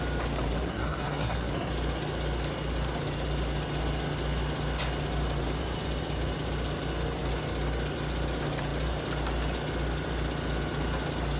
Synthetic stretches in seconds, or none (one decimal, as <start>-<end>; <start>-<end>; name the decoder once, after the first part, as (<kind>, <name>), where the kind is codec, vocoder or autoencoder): 0.5-1.7 (codec, SNAC)